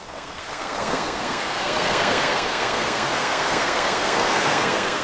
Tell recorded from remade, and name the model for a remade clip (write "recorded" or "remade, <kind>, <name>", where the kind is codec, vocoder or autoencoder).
remade, codec, SNAC